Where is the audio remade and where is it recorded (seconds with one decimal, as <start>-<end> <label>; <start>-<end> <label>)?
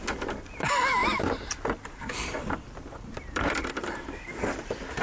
0.0-1.0 recorded; 1.0-4.0 remade; 4.0-5.0 recorded